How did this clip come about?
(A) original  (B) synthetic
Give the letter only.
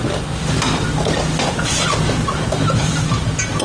A